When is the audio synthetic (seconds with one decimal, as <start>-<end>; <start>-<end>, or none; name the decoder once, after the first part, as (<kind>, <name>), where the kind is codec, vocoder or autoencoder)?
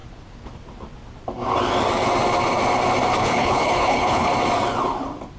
3.2-4.3 (codec, HILCodec)